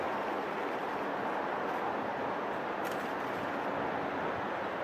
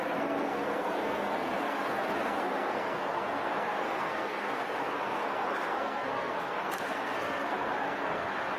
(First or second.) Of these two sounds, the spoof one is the second